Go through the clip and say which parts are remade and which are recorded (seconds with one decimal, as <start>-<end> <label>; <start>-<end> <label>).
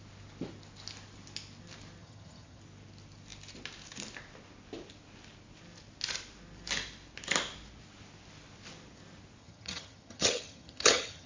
0.0-2.0 recorded; 2.0-2.6 remade; 2.6-9.4 recorded; 9.4-11.3 remade